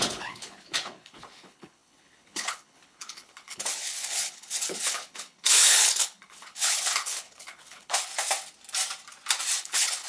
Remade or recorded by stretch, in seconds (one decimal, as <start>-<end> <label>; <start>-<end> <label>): 0.0-8.1 remade; 8.1-9.6 recorded; 9.6-10.1 remade